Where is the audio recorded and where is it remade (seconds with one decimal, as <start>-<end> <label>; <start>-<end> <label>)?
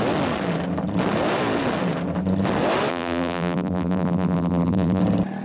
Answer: 0.0-2.9 recorded; 2.9-5.0 remade; 5.0-5.4 recorded